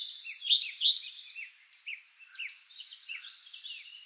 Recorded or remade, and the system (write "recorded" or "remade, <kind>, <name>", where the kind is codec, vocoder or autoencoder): recorded